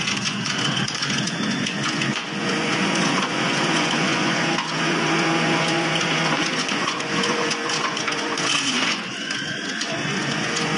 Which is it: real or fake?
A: fake